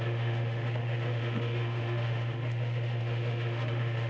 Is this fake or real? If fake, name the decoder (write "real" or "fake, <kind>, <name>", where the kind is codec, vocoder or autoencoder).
fake, autoencoder, DAC-VAE